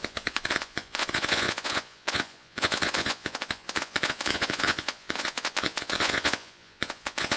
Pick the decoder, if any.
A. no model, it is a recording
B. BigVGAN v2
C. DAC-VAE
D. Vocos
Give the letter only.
D